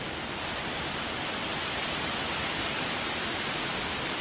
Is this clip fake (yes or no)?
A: yes